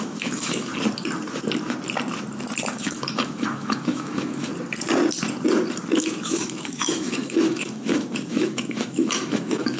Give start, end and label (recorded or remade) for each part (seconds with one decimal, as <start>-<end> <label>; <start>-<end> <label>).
0.0-0.7 remade; 0.7-2.7 recorded; 2.7-4.5 remade; 4.5-6.0 recorded; 6.0-9.8 remade